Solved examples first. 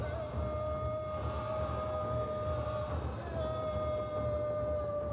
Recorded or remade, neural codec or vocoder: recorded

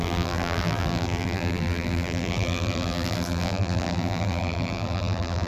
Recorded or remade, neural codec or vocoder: remade, vocoder, BigVGAN v2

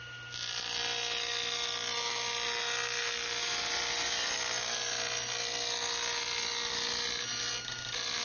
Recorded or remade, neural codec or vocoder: recorded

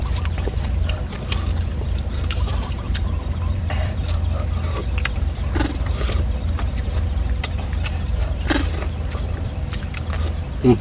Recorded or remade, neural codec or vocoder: remade, vocoder, BigVGAN v2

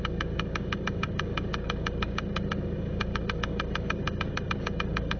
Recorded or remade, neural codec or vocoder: remade, codec, DAC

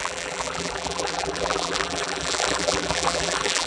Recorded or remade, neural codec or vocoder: remade, vocoder, BigVGAN v2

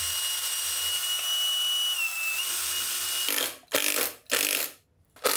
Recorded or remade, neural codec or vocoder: recorded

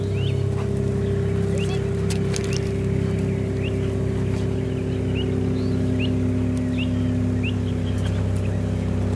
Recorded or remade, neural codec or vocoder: recorded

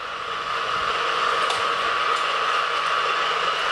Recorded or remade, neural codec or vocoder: remade, vocoder, Vocos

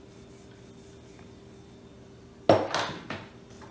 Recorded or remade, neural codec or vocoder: recorded